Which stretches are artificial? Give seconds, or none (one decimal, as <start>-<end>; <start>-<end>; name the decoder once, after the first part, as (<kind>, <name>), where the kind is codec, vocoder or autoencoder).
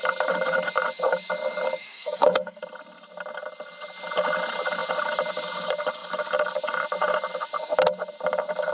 1.8-2.6 (codec, SNAC)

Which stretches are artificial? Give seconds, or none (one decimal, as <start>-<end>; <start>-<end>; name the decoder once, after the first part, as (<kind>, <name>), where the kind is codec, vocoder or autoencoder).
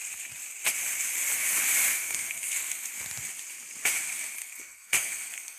1.9-2.9 (codec, SNAC); 4.4-5.6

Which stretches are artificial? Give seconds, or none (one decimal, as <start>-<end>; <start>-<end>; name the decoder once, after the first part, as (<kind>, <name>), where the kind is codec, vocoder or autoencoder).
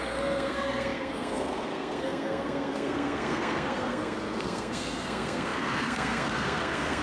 0.0-7.0 (codec, SNAC)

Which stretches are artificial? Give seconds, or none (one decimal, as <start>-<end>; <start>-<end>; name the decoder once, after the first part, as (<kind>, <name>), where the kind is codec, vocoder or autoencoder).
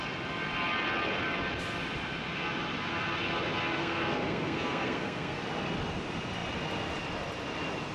3.8-5.4 (codec, SNAC)